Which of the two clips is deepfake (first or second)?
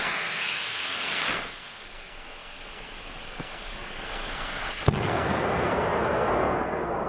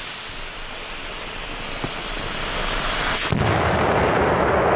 first